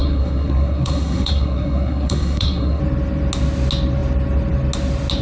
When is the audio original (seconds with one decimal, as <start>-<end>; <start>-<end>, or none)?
2.8-5.2